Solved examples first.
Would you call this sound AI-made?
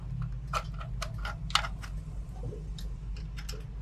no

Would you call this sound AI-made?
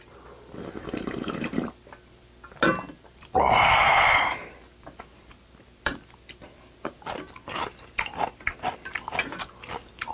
no